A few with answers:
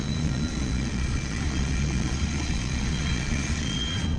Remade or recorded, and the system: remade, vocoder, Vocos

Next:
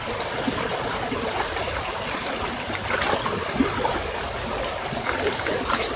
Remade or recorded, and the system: recorded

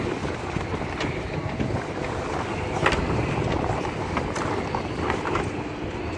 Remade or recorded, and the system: recorded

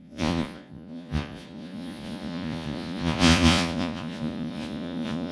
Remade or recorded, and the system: remade, vocoder, Vocos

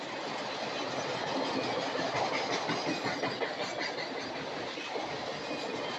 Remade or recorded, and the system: recorded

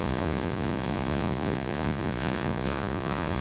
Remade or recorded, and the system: remade, vocoder, Vocos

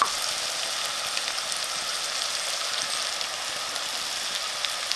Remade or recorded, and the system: recorded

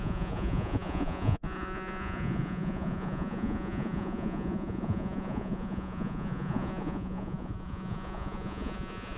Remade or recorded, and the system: remade, vocoder, Vocos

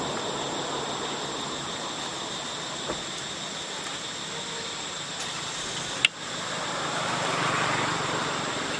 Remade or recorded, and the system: recorded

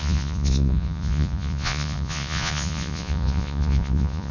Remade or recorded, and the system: remade, vocoder, Vocos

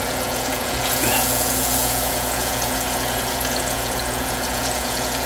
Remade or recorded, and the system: remade, vocoder, Vocos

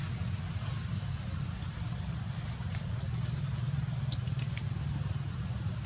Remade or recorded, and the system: recorded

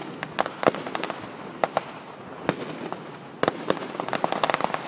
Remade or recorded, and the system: recorded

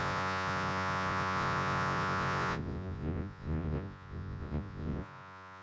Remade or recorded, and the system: remade, vocoder, Vocos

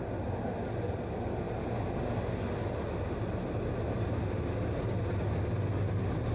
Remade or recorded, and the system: recorded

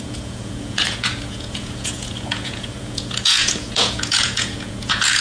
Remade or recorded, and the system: remade, vocoder, Vocos